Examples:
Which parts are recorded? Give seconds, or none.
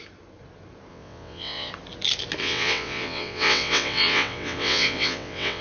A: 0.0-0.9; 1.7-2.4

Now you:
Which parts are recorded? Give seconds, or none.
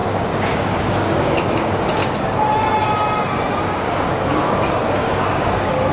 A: 2.0-3.6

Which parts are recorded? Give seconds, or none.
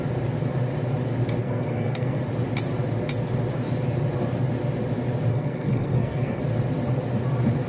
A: 0.0-1.4; 2.2-5.3; 6.4-7.7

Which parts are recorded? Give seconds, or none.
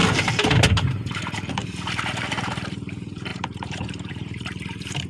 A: 1.6-2.3